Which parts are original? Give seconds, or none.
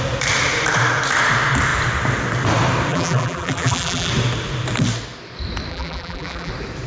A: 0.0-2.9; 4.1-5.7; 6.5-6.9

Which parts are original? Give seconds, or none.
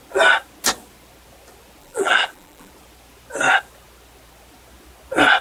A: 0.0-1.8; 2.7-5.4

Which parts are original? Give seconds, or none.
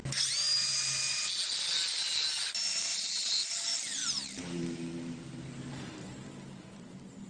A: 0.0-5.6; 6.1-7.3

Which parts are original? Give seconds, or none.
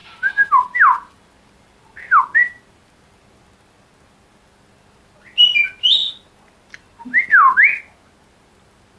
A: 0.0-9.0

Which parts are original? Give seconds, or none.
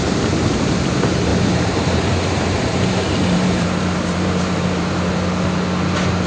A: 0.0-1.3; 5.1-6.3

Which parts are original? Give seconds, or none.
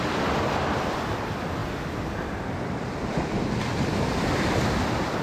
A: 0.0-5.2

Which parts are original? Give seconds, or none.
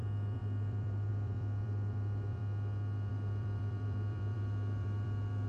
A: 2.4-3.1